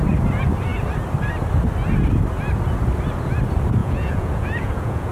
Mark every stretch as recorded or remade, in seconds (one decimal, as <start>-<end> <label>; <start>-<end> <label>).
0.0-3.8 recorded; 3.8-5.1 remade